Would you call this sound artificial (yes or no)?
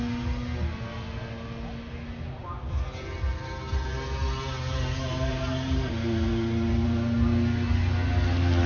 no